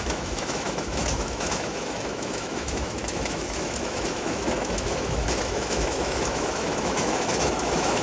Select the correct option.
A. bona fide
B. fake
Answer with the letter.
B